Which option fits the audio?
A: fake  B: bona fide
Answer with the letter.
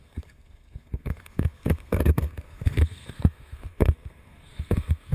A